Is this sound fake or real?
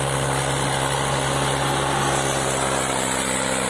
real